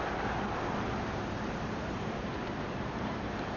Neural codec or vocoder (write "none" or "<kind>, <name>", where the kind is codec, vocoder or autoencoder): vocoder, BigVGAN v2